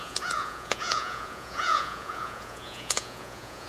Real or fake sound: fake